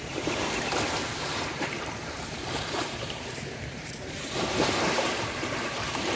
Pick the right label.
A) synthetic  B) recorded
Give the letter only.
A